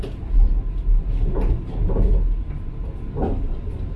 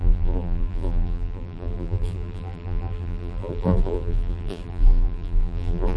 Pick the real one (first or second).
first